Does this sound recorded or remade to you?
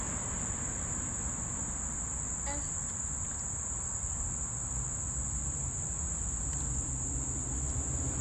recorded